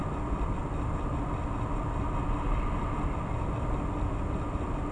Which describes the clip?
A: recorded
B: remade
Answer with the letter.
A